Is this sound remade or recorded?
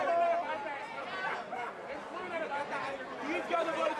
recorded